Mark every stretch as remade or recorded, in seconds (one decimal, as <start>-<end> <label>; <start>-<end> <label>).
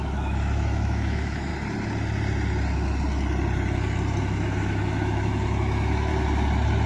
0.0-1.5 remade; 1.5-4.2 recorded; 4.2-6.1 remade; 6.1-6.9 recorded